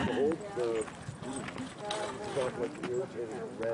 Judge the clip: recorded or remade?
recorded